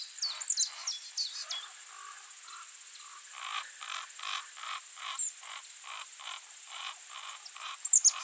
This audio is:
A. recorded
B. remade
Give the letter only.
A